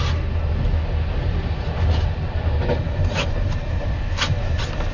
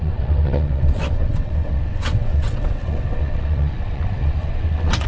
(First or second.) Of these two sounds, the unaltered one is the first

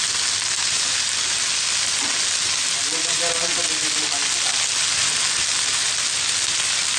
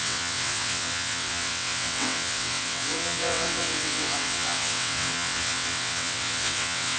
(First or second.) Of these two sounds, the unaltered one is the first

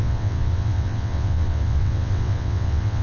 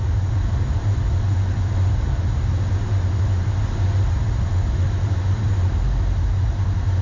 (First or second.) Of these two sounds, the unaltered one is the second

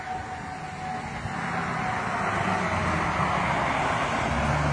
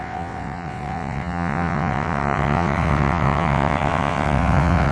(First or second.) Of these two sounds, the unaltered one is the first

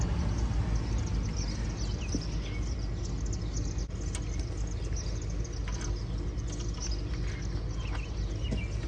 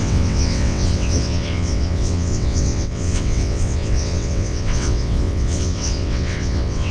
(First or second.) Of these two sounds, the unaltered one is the first